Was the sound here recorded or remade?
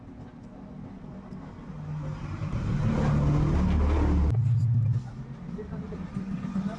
recorded